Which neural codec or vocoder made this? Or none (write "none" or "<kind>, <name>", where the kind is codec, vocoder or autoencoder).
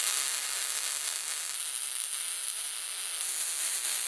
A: none